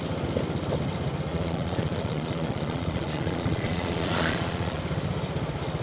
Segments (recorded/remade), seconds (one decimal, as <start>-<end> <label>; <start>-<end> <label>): 0.0-1.3 recorded; 1.3-4.8 remade; 4.8-5.8 recorded